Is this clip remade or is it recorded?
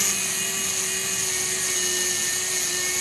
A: recorded